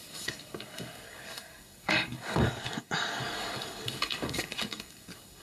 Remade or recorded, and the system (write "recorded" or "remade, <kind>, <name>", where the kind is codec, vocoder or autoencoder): remade, codec, DAC